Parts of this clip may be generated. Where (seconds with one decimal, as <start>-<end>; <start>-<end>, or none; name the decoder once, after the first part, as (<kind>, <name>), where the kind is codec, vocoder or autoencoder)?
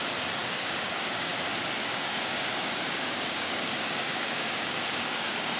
0.4-1.3 (codec, DAC); 1.8-5.6